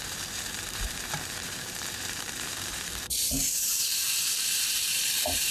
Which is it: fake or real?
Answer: fake